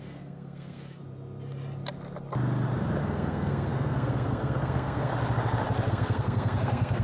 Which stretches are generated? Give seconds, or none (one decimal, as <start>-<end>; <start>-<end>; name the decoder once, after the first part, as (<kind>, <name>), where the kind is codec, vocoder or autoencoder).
0.0-1.0 (codec, SNAC); 3.0-5.1; 5.9-7.0